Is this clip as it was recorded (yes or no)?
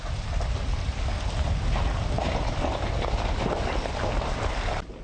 yes